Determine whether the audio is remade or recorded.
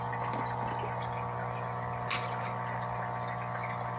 recorded